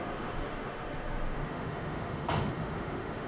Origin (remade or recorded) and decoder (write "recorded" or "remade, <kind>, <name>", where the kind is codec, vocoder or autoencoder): remade, autoencoder, DAC-VAE